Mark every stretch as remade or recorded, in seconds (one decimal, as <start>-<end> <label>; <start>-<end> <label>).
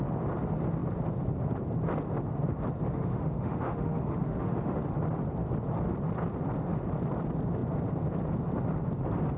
0.0-2.9 recorded; 2.9-4.8 remade; 4.8-9.4 recorded